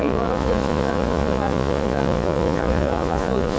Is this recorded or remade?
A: remade